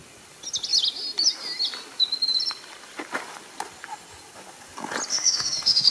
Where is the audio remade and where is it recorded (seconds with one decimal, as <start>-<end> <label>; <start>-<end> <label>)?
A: 0.0-5.1 recorded; 5.1-5.9 remade